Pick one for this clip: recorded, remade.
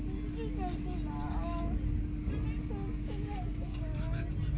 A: recorded